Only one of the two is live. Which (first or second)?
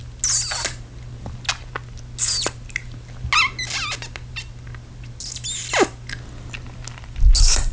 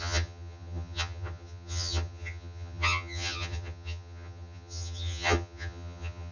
first